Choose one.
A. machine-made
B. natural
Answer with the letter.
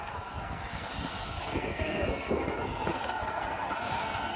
A